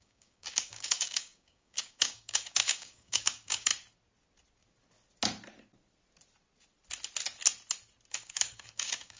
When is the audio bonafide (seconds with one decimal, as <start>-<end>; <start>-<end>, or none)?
3.7-8.1